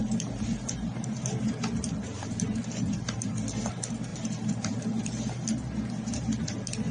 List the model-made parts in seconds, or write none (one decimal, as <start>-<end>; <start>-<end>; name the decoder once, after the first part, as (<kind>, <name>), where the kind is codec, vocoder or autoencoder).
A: 0.0-3.3 (vocoder, BigVGAN v2); 4.1-5.0